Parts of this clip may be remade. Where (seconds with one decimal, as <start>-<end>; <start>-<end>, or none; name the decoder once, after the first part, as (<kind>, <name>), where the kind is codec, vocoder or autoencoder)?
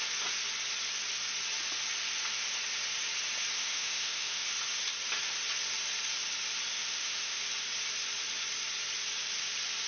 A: 3.6-4.5 (autoencoder, DAC-VAE); 6.7-7.4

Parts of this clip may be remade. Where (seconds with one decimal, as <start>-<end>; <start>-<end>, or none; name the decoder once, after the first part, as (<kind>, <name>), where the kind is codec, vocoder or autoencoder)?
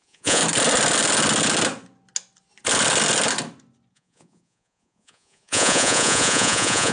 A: 0.0-0.4 (vocoder, Vocos); 3.9-6.9